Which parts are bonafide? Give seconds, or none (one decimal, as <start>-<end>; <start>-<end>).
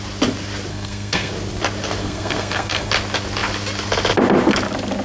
0.0-0.7; 1.3-2.0; 2.9-5.0